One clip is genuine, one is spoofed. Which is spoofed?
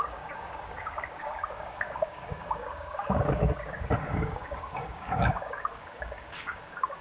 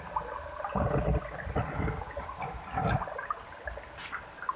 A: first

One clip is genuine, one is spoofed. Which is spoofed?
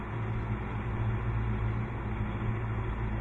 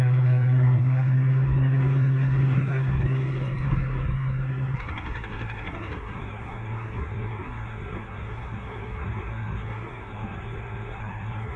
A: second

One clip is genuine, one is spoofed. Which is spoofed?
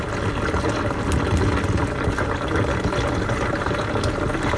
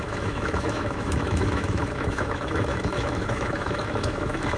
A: second